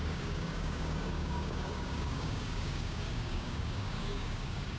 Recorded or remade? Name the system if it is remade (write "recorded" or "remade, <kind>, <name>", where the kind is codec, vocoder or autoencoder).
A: remade, codec, DAC